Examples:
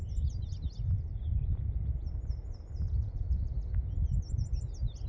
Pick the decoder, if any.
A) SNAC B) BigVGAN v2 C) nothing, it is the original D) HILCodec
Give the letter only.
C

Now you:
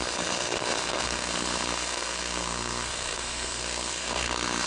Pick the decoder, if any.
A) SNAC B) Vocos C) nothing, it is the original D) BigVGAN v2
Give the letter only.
A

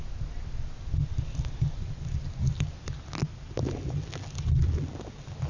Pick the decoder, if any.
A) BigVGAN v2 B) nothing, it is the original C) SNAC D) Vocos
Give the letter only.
B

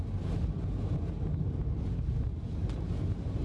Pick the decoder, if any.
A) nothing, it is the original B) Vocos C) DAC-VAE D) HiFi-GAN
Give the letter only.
A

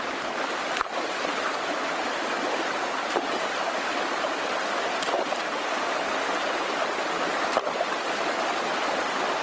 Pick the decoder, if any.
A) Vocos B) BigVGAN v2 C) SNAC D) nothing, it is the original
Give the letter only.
D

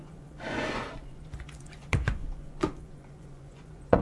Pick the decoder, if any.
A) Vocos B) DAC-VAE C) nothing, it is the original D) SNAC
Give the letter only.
A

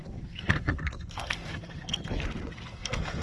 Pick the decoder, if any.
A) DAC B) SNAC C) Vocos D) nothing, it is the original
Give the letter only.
B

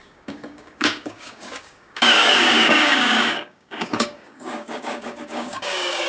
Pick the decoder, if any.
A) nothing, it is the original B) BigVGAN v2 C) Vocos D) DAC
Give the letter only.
D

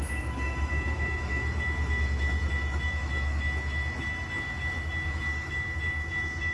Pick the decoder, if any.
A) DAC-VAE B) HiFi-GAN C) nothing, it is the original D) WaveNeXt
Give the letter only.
A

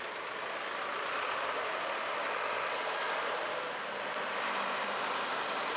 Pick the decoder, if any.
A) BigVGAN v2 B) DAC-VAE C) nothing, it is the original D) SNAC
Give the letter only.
C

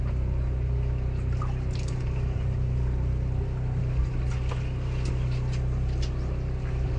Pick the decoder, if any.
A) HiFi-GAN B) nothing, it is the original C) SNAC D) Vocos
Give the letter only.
B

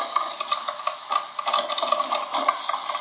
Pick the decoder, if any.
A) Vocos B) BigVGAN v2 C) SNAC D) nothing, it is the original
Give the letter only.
D